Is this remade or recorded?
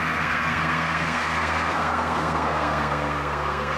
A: remade